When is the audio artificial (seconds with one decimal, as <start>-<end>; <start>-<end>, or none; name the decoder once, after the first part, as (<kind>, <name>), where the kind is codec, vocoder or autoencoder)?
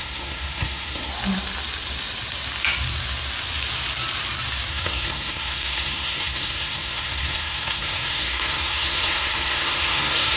0.0-1.1 (codec, SNAC); 4.7-10.4